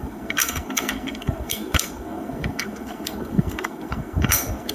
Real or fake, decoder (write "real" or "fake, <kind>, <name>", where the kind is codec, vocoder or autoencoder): fake, codec, SNAC